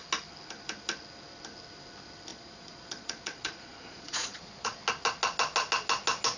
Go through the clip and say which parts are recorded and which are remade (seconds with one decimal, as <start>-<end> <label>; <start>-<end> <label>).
0.0-2.3 recorded; 2.3-4.8 remade; 4.8-6.4 recorded